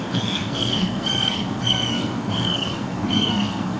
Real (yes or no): no